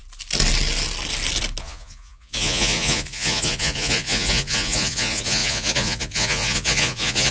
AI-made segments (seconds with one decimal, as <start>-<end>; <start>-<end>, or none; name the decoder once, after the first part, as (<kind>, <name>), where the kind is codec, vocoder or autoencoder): 1.6-7.3 (vocoder, Vocos)